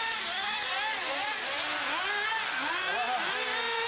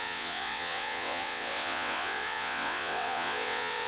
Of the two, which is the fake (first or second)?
second